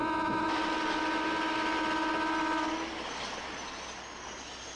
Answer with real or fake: real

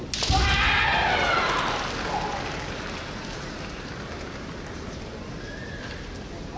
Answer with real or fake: real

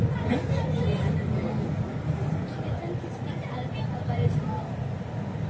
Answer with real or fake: real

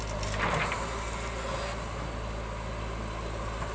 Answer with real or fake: real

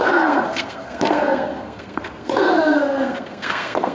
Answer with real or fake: fake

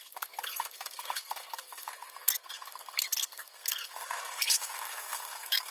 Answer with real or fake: fake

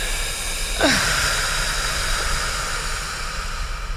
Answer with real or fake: real